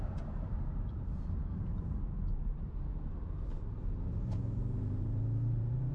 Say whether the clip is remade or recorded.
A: remade